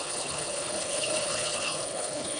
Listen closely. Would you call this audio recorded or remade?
remade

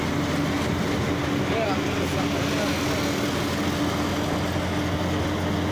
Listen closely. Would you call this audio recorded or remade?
recorded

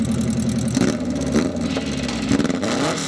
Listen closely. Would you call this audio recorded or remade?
recorded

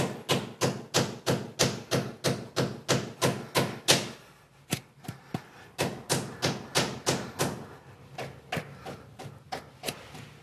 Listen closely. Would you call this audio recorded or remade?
recorded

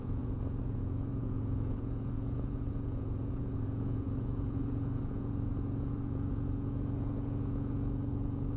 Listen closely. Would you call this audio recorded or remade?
remade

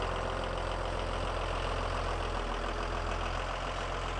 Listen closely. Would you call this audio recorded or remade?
recorded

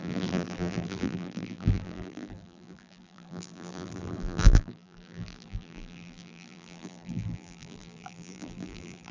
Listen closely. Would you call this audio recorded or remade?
remade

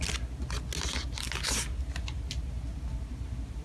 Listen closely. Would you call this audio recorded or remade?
recorded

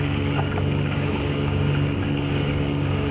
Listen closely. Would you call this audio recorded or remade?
remade